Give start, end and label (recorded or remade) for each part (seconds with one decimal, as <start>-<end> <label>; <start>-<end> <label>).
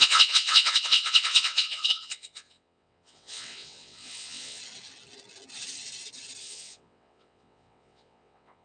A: 0.0-4.6 remade; 4.6-6.4 recorded; 6.4-8.6 remade